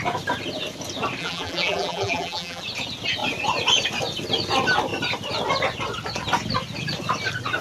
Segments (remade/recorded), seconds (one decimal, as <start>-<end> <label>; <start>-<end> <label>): 0.0-1.2 recorded; 1.2-2.6 remade; 2.6-7.6 recorded